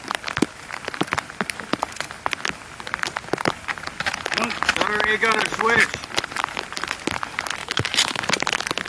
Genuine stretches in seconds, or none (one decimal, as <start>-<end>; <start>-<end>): 0.0-7.6; 8.2-8.9